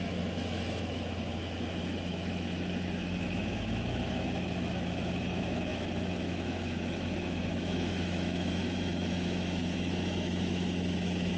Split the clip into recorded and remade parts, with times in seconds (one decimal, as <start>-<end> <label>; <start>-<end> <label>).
0.0-11.4 remade